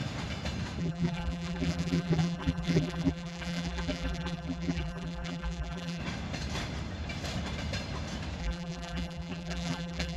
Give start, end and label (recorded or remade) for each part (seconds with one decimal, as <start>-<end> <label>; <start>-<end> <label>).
0.0-0.8 recorded; 0.8-6.0 remade; 6.0-8.4 recorded; 8.4-10.2 remade